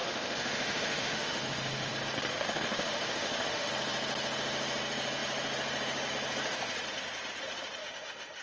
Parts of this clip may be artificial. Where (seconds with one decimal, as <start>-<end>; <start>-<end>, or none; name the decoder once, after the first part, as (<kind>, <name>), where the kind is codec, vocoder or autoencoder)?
0.0-1.9 (autoencoder, DAC-VAE); 2.3-3.7; 7.8-8.4